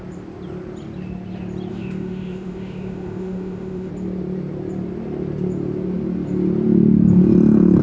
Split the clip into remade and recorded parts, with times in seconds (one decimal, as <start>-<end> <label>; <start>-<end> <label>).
0.0-1.7 recorded; 1.7-3.9 remade; 3.9-7.8 recorded